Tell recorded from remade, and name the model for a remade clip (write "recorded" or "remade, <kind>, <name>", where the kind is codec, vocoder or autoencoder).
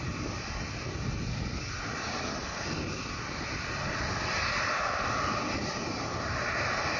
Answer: recorded